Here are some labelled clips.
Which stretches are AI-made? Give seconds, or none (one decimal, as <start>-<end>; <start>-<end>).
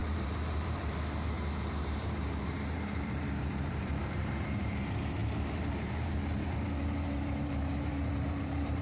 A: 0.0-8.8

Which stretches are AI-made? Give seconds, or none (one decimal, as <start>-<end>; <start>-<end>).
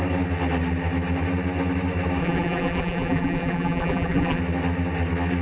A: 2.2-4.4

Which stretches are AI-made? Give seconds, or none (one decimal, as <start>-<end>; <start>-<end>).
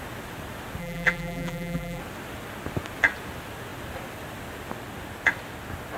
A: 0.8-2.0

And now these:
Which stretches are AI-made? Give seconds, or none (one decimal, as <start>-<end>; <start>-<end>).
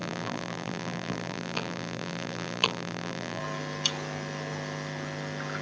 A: 0.0-3.4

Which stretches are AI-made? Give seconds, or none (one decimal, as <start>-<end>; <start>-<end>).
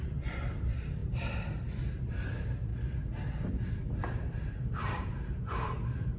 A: 0.0-2.7; 4.1-6.2